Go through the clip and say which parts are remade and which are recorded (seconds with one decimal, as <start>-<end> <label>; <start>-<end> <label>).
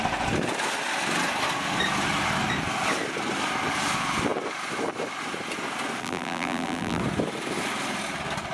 0.0-6.0 recorded; 6.0-7.0 remade; 7.0-8.5 recorded